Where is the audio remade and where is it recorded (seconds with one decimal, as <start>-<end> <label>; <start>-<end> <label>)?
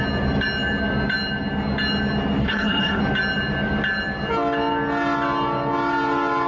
0.0-2.4 recorded; 2.4-3.0 remade; 3.0-6.5 recorded